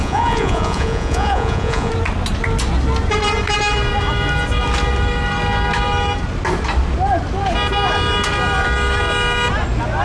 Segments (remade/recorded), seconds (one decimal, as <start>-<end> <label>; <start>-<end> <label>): 0.0-1.9 remade; 1.9-10.0 recorded